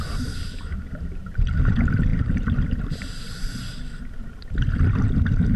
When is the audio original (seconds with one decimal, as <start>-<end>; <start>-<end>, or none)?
0.0-5.6

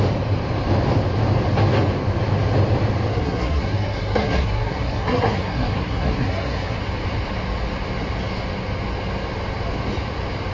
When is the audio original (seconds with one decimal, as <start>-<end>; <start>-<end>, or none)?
0.0-3.1; 6.8-10.5

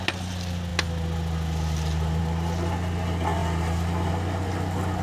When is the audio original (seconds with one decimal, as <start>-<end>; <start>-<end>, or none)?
0.0-5.0

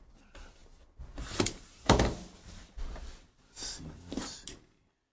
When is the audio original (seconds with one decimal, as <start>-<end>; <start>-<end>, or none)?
0.0-5.1